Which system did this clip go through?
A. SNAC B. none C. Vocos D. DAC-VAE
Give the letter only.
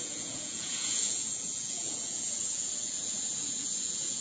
C